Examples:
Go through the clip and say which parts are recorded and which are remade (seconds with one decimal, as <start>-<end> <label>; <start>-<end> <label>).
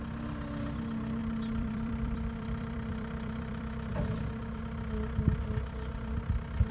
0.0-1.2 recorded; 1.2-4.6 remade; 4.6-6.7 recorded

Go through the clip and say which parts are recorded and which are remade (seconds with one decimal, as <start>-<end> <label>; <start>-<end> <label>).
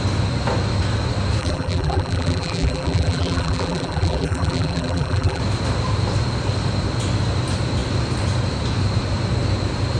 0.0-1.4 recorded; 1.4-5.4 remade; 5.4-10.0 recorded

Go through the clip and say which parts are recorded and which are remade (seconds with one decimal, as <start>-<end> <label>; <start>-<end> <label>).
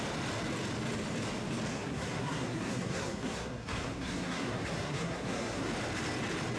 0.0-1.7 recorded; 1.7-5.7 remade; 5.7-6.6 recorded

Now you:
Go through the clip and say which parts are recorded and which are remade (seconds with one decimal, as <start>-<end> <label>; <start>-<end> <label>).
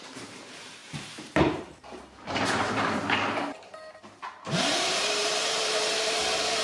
0.0-6.6 remade